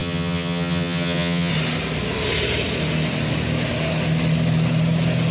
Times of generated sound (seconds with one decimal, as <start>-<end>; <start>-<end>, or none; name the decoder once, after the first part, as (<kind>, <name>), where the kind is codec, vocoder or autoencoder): 0.0-1.5 (vocoder, HiFi-GAN)